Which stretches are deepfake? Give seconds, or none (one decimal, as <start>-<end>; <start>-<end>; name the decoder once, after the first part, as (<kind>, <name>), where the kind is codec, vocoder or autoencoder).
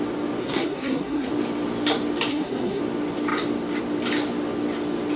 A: 0.4-1.3 (codec, SNAC); 2.3-2.8